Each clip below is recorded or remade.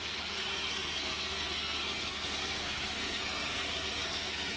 remade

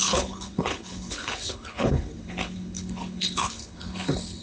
remade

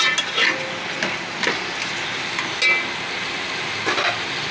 recorded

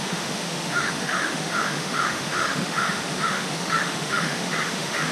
remade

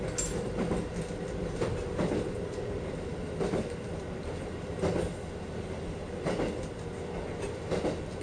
recorded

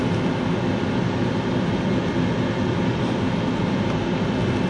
recorded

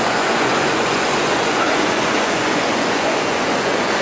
remade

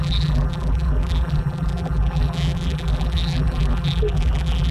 remade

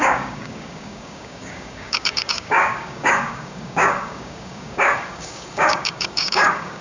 remade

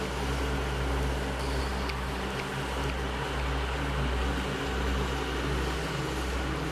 recorded